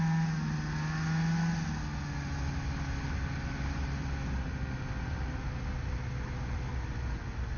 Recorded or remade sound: recorded